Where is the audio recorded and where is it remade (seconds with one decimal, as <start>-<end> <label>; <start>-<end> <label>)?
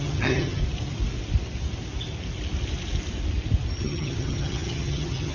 0.0-0.6 remade; 0.6-3.8 recorded; 3.8-5.3 remade